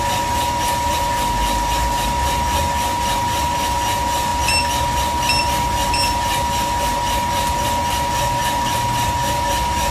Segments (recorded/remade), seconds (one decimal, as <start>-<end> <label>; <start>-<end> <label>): 0.0-9.9 recorded